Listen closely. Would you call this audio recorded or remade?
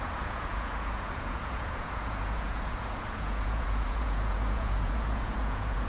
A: remade